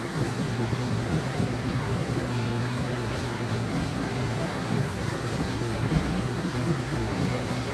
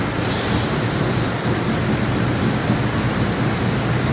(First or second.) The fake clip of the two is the first